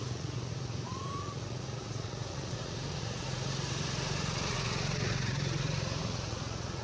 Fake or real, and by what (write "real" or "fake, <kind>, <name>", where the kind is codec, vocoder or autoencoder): fake, vocoder, Vocos